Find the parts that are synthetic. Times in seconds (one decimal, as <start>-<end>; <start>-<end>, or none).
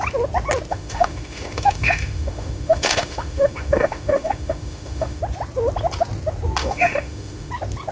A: 0.7-5.2; 6.6-7.5